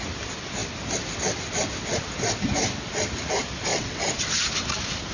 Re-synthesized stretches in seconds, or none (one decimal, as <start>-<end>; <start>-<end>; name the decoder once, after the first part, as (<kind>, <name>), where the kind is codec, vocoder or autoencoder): 3.7-4.2 (vocoder, WaveNeXt)